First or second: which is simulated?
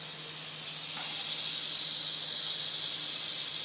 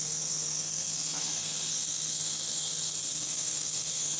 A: second